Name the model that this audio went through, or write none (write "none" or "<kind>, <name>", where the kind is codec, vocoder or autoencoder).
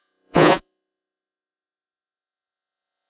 vocoder, Vocos